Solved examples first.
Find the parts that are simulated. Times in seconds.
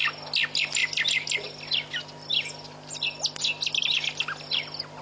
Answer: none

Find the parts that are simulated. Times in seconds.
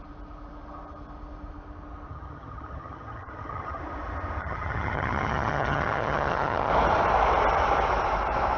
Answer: 2.1-3.8 (vocoder, HiFi-GAN); 4.4-6.7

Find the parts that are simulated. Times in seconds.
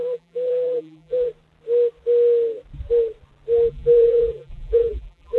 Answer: 0.0-1.3 (vocoder, BigVGAN v2); 3.7-5.4